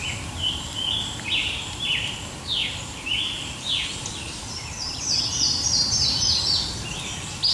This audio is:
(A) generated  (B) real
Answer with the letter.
A